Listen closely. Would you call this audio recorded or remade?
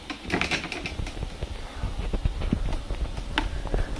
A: recorded